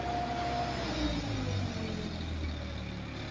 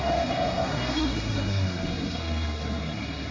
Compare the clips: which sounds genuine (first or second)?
first